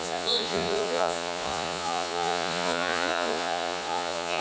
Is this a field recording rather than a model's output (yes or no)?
no